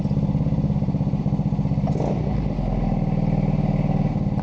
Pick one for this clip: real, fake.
real